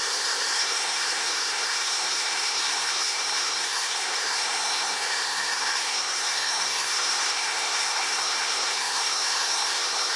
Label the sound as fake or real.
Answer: fake